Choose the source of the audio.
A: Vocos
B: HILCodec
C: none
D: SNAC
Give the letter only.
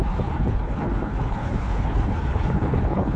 B